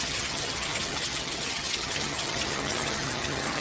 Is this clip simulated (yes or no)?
yes